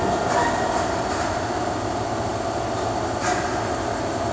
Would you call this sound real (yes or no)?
no